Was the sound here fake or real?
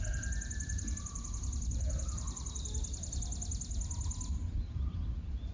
real